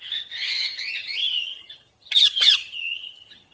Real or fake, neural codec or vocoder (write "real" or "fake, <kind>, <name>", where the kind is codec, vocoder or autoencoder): fake, vocoder, HiFi-GAN